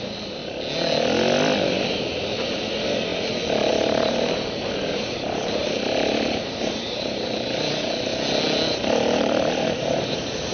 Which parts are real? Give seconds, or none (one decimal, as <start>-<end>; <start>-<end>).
0.4-1.6; 3.1-3.7; 8.1-9.2